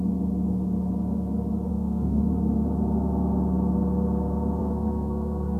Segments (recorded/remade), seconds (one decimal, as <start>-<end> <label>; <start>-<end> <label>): 0.0-1.7 recorded; 1.7-2.2 remade; 2.2-4.6 recorded; 4.6-5.6 remade